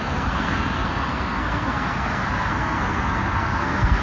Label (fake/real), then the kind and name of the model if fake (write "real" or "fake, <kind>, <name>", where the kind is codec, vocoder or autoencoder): fake, codec, SNAC